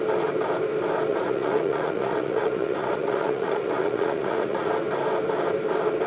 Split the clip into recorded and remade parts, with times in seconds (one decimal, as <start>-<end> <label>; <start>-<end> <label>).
0.0-1.1 recorded; 1.1-4.7 remade; 4.7-6.1 recorded